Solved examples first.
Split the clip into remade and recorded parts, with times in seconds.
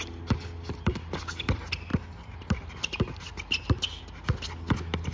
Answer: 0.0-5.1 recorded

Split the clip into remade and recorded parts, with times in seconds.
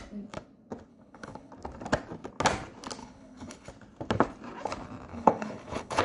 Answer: 0.0-0.9 recorded; 0.9-1.5 remade; 1.5-3.0 recorded; 3.0-3.7 remade; 3.7-5.1 recorded; 5.1-6.0 remade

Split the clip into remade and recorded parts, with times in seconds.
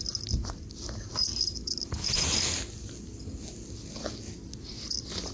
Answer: 0.0-5.3 recorded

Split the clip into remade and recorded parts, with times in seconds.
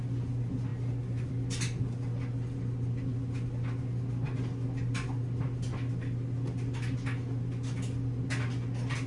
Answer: 0.0-9.1 recorded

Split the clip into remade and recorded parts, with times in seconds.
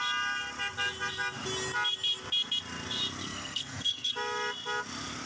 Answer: 0.0-3.2 recorded; 3.2-4.1 remade; 4.1-5.3 recorded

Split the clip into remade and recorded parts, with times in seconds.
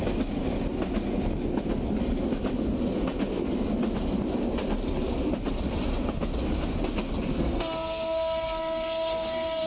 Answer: 0.0-7.3 recorded; 7.3-9.7 remade